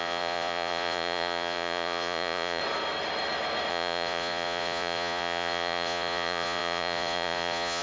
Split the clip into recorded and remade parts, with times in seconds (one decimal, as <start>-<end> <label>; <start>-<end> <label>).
0.0-2.6 remade; 2.6-3.7 recorded; 3.7-7.8 remade